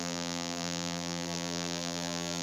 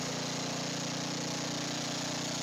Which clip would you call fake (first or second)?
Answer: first